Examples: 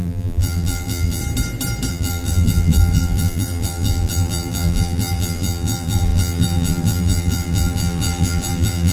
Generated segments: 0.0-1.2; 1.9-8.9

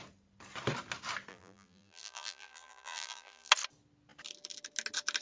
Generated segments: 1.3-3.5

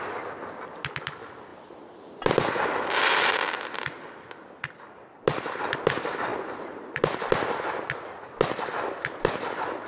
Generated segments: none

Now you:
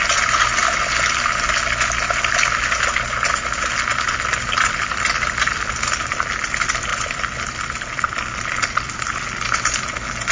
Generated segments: 3.9-6.1; 6.9-9.2

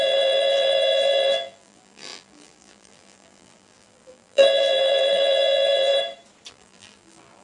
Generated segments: 0.0-5.9; 6.5-7.4

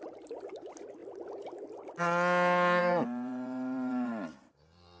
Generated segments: 2.8-5.0

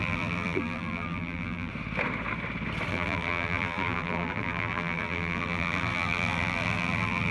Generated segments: 0.0-1.7; 2.9-7.3

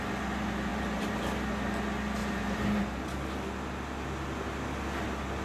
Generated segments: 0.7-1.5; 2.2-2.8